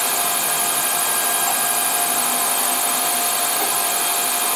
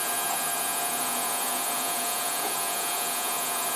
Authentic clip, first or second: first